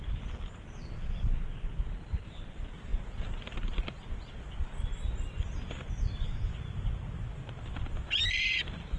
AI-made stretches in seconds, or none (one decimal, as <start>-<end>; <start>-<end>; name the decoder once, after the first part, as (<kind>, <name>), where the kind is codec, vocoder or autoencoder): none